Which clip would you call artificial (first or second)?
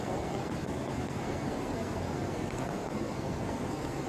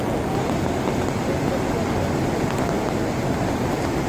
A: first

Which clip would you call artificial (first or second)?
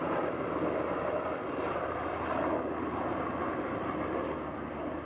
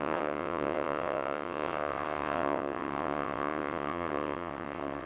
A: second